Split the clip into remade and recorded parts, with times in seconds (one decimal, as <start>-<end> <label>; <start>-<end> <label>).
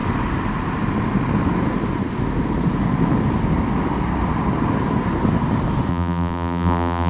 0.0-5.9 recorded; 5.9-7.1 remade